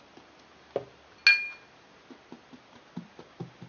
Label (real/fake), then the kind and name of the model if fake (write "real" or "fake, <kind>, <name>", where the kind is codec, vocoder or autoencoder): real